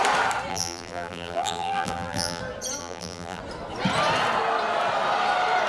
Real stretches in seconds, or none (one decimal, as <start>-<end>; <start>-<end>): 0.0-0.5; 2.4-2.8; 3.4-5.7